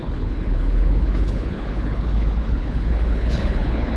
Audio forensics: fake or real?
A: fake